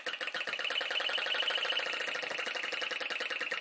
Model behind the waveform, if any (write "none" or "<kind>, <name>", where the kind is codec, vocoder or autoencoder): none